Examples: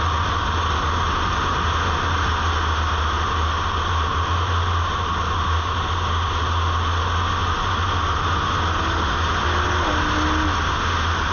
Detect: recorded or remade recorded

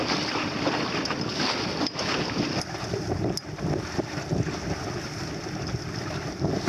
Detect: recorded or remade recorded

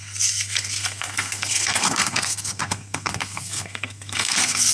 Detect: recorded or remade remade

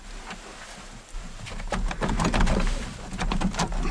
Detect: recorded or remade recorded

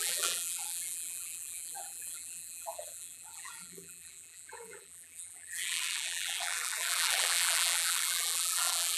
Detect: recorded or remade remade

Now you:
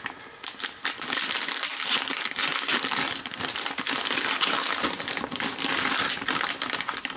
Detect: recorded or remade recorded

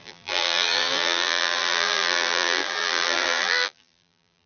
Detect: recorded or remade remade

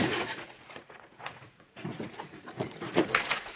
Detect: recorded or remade remade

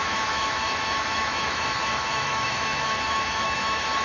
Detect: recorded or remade remade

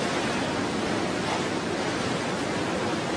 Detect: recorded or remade recorded